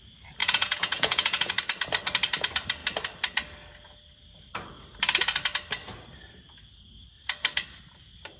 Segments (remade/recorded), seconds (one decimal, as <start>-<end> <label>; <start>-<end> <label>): 0.0-0.4 recorded; 0.4-1.5 remade; 1.5-8.4 recorded